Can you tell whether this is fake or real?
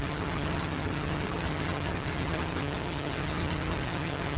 fake